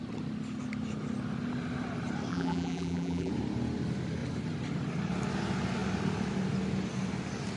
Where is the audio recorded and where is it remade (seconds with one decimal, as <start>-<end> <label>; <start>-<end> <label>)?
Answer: 0.0-2.3 recorded; 2.3-3.3 remade; 3.3-7.6 recorded